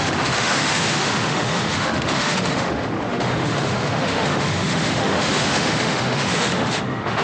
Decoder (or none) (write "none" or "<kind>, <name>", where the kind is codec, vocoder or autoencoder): autoencoder, DAC-VAE